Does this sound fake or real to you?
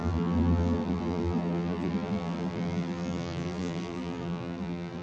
fake